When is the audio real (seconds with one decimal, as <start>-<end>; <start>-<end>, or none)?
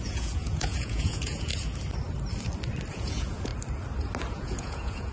1.5-2.9; 3.5-4.3